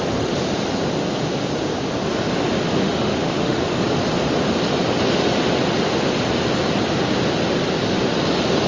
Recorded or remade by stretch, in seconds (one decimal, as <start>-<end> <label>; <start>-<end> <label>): 0.0-2.8 recorded; 2.8-3.6 remade; 3.6-8.7 recorded

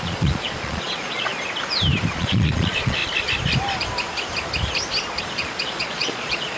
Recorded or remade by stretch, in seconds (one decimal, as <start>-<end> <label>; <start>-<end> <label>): 0.0-1.3 remade; 1.3-2.1 recorded; 2.1-3.0 remade; 3.0-5.2 recorded; 5.2-6.6 remade